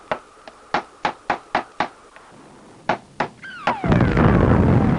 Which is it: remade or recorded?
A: recorded